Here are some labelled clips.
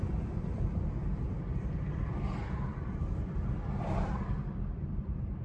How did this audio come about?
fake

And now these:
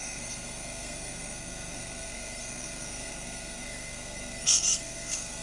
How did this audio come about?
fake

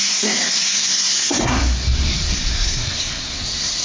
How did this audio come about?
fake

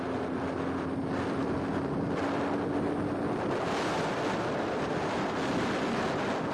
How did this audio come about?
real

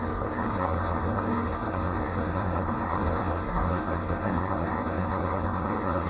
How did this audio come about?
fake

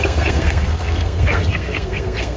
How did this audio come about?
fake